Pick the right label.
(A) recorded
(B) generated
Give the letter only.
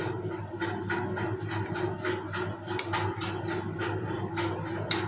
A